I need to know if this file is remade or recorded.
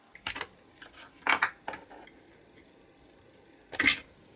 recorded